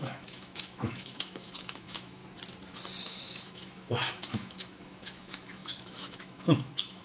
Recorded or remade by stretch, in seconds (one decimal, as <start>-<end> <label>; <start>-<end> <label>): 0.0-2.2 remade; 2.2-3.0 recorded; 3.0-7.0 remade